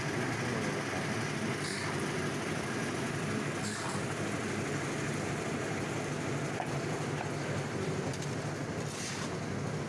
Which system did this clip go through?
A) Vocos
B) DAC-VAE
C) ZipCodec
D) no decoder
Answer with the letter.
D